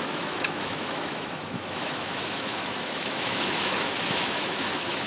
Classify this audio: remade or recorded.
remade